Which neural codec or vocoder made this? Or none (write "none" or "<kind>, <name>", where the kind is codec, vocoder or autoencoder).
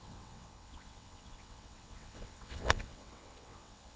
vocoder, WaveNeXt